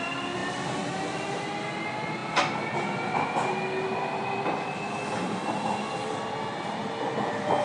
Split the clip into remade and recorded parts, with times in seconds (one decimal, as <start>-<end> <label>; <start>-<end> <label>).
0.0-7.6 recorded